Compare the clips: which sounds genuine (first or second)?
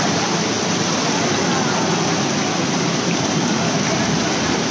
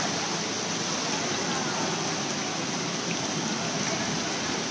second